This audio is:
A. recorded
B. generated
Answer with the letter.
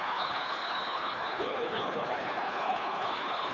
B